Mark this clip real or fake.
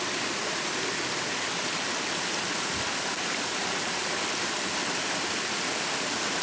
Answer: real